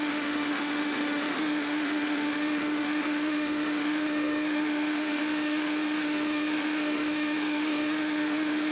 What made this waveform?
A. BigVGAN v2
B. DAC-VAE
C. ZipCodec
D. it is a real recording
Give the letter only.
B